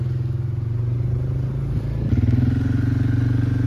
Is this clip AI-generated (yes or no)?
no